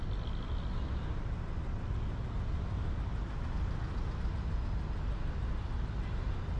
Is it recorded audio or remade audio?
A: recorded